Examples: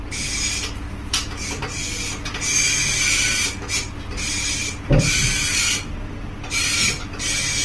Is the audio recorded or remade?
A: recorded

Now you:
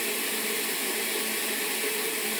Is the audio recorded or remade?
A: recorded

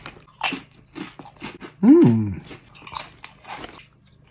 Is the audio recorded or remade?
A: recorded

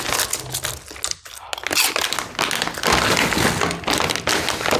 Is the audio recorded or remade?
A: recorded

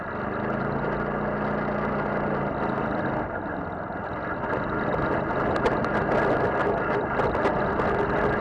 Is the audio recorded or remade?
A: recorded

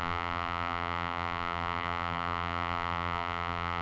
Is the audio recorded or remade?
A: remade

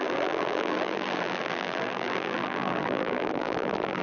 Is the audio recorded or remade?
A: remade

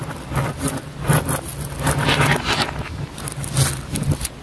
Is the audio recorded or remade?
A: recorded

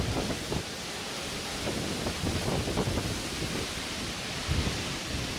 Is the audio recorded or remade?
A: recorded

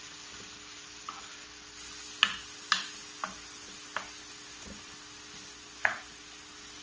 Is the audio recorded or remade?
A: recorded